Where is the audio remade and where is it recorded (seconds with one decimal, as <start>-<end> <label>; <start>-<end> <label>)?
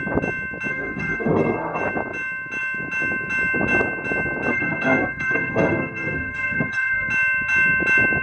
0.0-0.7 recorded; 0.7-1.8 remade; 1.8-4.5 recorded; 4.5-7.1 remade; 7.1-8.2 recorded